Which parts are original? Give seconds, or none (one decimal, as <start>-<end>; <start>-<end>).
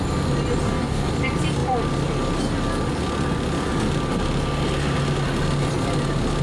0.0-0.6; 1.1-6.4